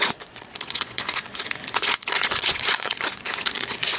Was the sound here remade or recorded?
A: remade